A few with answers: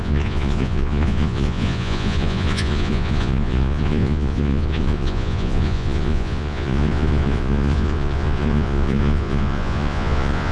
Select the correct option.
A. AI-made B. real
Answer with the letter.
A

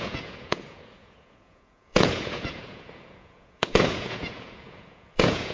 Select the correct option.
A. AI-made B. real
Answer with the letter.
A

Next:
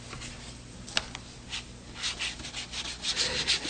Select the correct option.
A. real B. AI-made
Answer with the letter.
A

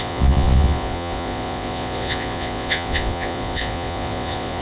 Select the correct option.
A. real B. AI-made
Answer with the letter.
B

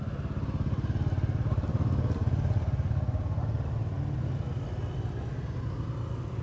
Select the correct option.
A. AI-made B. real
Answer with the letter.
B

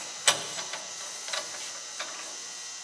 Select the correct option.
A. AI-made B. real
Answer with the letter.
B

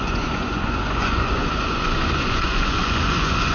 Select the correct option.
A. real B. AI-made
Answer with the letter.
B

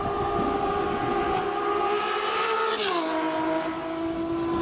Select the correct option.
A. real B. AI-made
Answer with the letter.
A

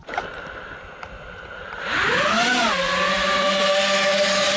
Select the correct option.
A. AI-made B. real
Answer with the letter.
B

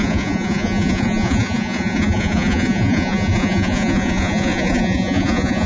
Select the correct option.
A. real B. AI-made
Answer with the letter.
B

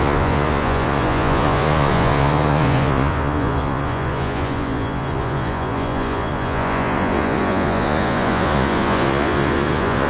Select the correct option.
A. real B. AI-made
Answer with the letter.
B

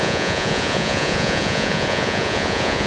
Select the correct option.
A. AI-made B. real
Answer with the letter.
A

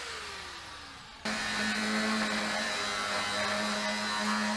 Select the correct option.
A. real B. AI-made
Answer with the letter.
A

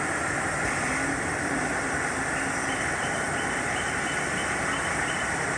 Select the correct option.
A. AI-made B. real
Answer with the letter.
B